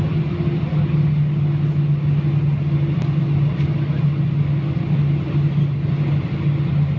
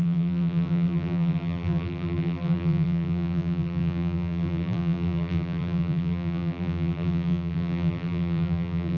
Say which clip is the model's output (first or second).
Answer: second